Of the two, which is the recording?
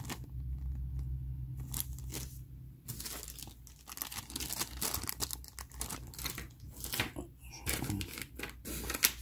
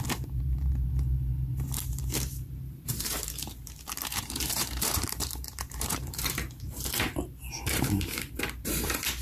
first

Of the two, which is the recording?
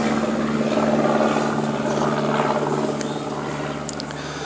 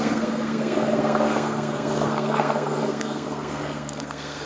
first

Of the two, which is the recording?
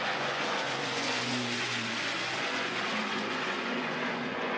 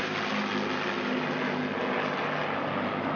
second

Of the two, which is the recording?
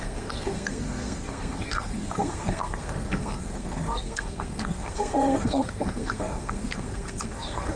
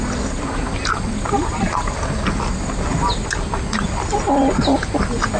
second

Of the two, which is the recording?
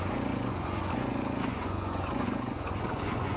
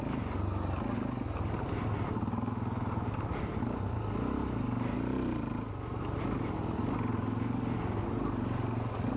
second